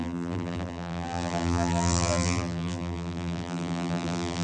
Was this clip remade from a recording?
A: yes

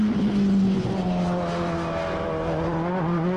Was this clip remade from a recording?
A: no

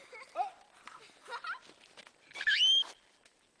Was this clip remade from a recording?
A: no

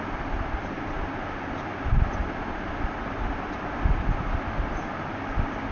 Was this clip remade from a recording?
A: no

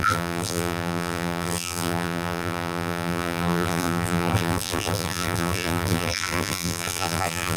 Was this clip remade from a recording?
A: yes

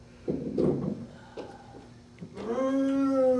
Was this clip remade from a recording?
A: no